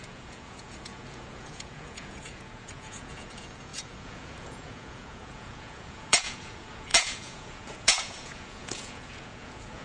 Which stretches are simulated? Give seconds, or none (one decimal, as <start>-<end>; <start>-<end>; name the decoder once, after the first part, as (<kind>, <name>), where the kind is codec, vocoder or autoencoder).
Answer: 0.0-9.8 (vocoder, Vocos)